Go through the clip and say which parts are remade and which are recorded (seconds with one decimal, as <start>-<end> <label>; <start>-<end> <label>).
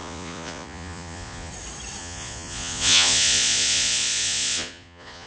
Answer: 0.0-1.5 remade; 1.5-2.0 recorded; 2.0-5.3 remade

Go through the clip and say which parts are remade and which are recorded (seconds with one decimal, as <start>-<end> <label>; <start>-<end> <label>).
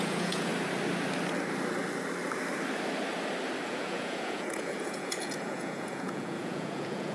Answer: 0.0-0.5 remade; 0.5-3.7 recorded; 3.7-7.1 remade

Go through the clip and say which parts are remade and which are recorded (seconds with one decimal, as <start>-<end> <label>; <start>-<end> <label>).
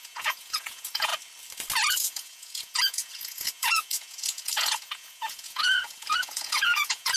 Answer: 0.0-1.1 remade; 1.1-1.9 recorded; 1.9-7.2 remade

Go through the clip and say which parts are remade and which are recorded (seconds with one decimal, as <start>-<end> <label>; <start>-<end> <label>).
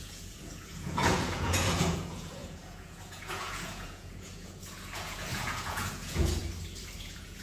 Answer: 0.0-6.4 remade; 6.4-7.0 recorded; 7.0-7.4 remade